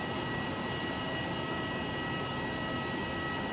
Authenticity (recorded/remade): recorded